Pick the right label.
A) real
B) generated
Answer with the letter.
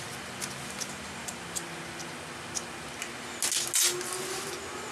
A